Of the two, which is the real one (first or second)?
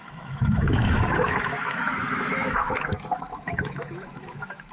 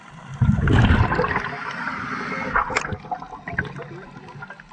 second